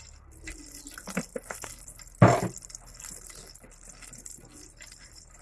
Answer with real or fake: real